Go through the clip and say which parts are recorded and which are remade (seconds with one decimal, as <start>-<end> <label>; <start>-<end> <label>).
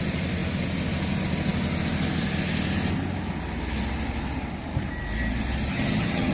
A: 0.0-5.7 recorded; 5.7-6.3 remade